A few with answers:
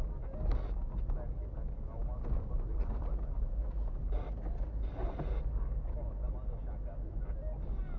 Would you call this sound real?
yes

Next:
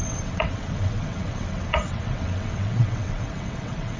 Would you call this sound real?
no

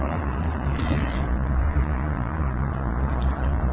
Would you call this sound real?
no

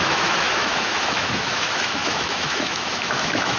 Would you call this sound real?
no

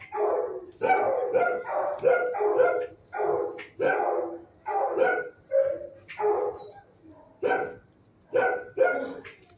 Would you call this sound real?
yes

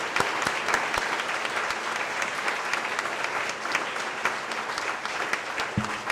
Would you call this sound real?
yes